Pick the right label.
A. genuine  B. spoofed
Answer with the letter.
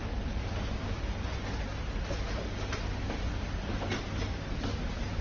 A